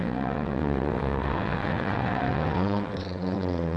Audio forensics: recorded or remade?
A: remade